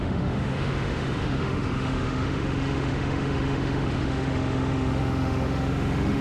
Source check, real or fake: fake